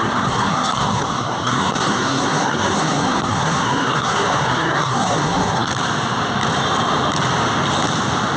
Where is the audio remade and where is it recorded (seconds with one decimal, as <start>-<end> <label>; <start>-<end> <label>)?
0.0-5.7 remade; 5.7-8.4 recorded